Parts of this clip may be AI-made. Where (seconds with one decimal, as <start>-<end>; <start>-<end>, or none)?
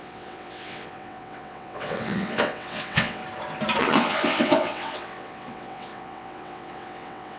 0.0-3.2; 3.8-7.4